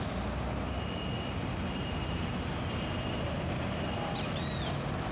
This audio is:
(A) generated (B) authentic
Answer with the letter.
B